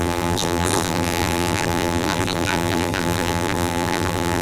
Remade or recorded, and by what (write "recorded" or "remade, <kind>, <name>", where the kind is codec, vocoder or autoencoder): remade, vocoder, BigVGAN v2